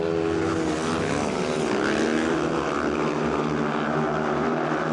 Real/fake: real